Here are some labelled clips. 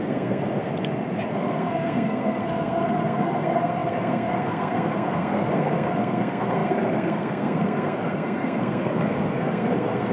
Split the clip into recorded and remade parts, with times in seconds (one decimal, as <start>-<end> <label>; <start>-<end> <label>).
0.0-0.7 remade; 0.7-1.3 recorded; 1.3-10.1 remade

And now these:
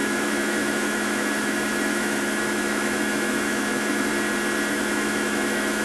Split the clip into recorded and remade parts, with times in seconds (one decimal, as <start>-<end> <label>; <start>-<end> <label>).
0.0-4.1 remade; 4.1-4.7 recorded; 4.7-5.8 remade

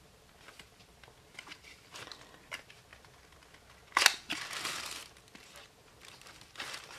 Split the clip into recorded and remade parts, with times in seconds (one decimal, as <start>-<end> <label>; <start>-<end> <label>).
0.0-2.9 remade; 2.9-4.1 recorded; 4.1-5.0 remade; 5.0-5.8 recorded; 5.8-7.0 remade

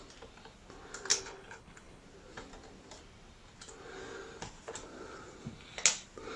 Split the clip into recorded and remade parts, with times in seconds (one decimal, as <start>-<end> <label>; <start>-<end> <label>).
0.0-1.1 recorded; 1.1-2.0 remade; 2.0-6.4 recorded

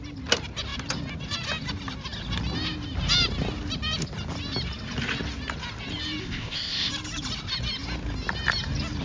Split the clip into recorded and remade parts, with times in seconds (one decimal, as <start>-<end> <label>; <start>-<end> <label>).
0.0-6.2 recorded; 6.2-6.9 remade; 6.9-9.0 recorded

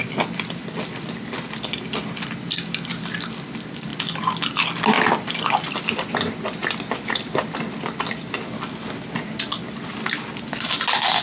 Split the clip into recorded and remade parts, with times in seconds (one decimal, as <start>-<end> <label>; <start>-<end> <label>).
0.0-11.2 recorded